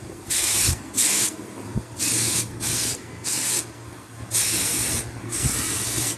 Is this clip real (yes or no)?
no